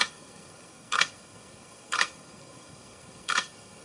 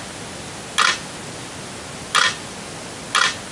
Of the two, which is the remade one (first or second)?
first